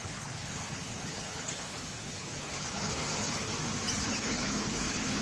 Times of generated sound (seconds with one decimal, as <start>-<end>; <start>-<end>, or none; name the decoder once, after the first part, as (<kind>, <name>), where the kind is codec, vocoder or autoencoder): 0.0-3.5 (codec, HILCodec); 4.0-5.2